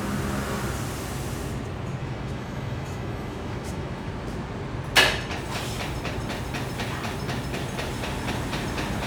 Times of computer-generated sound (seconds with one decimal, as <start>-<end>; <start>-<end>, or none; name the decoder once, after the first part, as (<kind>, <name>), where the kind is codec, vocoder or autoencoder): 2.0-4.1 (autoencoder, DAC-VAE)